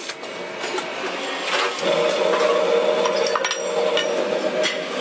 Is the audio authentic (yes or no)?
yes